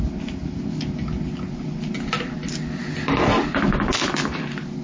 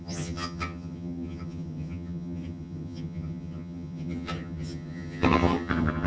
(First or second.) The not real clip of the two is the second